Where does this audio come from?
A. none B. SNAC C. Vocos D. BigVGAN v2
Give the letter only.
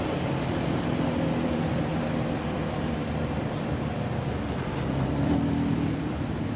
A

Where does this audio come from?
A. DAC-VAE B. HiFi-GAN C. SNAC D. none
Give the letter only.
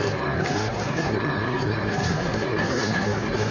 C